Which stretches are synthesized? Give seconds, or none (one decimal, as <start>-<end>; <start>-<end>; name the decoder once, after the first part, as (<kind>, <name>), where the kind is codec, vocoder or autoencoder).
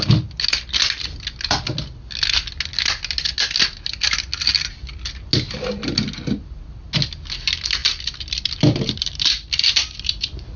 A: 7.8-10.6 (vocoder, BigVGAN v2)